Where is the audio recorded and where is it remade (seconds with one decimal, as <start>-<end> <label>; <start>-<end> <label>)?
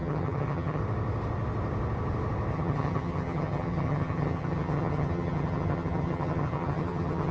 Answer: 0.0-0.8 remade; 0.8-2.5 recorded; 2.5-7.3 remade